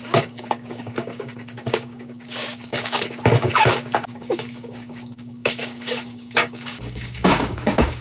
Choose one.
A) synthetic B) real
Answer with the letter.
A